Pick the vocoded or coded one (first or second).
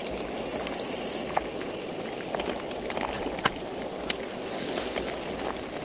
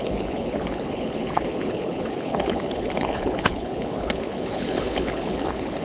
second